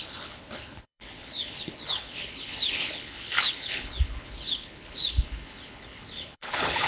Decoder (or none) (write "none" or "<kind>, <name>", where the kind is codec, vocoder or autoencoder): codec, HILCodec